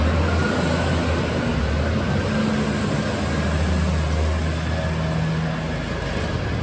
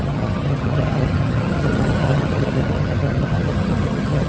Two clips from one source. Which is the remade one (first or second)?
second